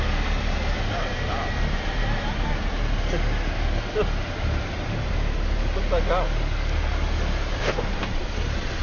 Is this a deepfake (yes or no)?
no